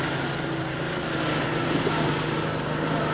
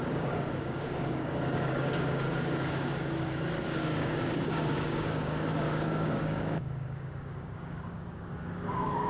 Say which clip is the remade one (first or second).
second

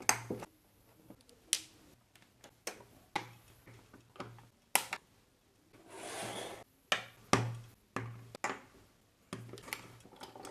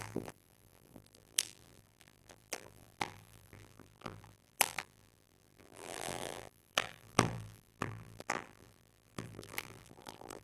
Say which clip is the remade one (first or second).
second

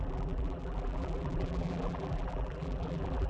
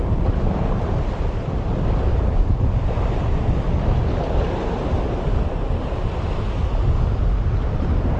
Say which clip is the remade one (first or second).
first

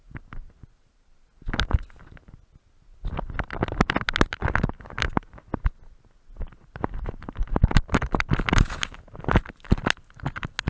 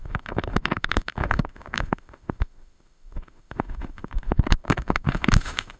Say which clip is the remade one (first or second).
second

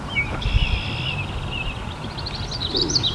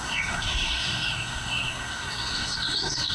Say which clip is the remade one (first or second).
second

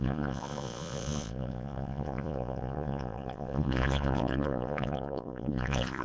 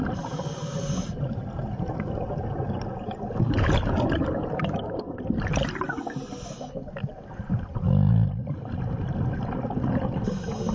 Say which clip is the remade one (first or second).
first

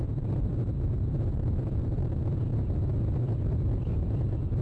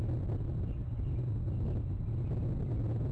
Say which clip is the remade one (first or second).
first